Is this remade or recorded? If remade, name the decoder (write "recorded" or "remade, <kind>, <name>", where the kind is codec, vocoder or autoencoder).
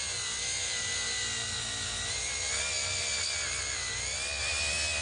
recorded